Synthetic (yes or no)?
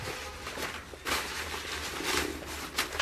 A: no